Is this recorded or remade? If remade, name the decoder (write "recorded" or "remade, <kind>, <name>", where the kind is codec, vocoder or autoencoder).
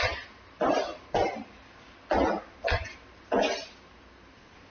recorded